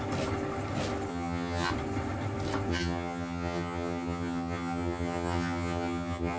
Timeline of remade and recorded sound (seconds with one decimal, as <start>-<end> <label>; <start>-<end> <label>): 0.0-1.1 recorded; 1.1-1.7 remade; 1.7-2.7 recorded; 2.7-6.4 remade